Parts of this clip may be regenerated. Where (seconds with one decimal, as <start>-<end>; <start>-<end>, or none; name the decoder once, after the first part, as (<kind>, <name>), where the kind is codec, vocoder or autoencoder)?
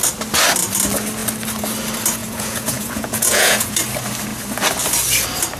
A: 2.2-3.7 (vocoder, Vocos)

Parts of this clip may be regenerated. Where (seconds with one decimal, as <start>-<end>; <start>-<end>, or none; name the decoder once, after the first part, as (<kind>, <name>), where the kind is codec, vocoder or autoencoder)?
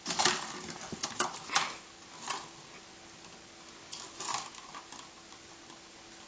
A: none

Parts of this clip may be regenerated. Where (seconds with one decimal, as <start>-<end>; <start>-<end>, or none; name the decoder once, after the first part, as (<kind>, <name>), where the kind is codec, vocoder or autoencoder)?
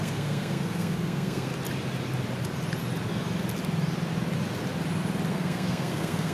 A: 0.0-1.5 (codec, SNAC); 5.3-6.3